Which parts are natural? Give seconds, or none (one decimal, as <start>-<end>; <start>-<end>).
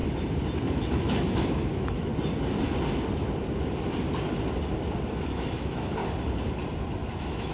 0.0-0.7; 2.1-5.1; 6.0-7.1